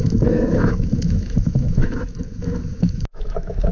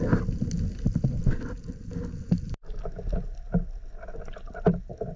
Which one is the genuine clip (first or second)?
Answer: second